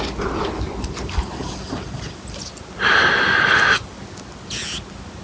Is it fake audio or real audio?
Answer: real